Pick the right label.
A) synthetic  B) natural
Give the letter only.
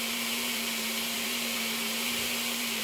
A